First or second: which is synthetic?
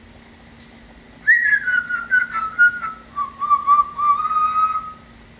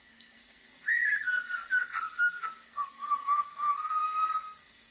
second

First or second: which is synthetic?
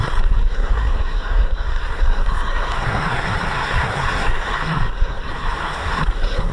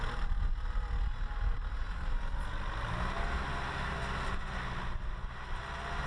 first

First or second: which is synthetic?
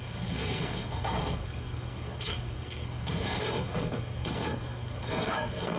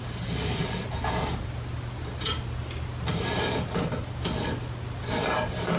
first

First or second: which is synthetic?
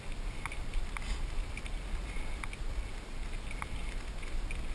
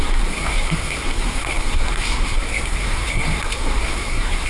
second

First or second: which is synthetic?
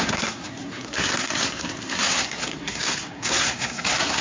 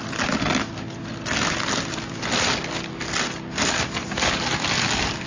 first